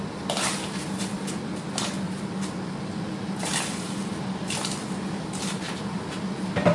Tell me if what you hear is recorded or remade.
recorded